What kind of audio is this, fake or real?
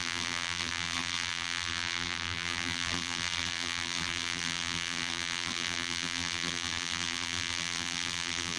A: fake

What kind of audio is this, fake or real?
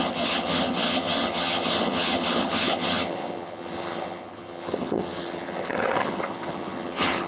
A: fake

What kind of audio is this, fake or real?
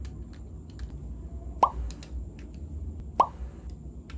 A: real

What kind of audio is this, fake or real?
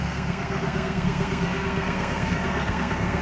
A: fake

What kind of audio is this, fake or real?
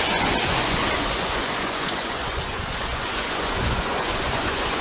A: fake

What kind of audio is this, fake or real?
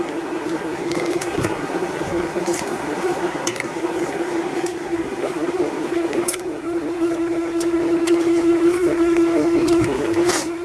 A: fake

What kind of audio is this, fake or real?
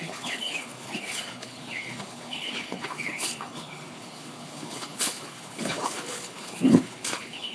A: fake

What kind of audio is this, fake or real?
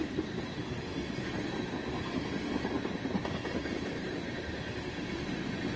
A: real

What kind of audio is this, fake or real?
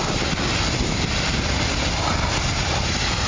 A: real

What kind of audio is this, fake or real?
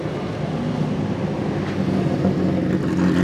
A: real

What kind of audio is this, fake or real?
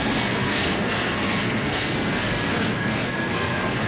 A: fake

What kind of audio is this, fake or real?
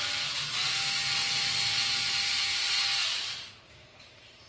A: real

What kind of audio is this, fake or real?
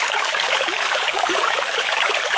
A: fake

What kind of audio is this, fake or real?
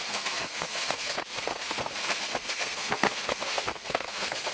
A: fake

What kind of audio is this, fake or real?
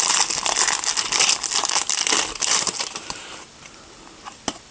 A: real